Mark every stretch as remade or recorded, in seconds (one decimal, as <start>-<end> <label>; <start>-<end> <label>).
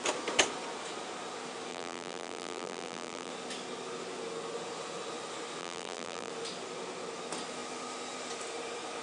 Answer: 0.0-1.7 recorded; 1.7-3.3 remade; 3.3-5.6 recorded; 5.6-6.3 remade; 6.3-9.0 recorded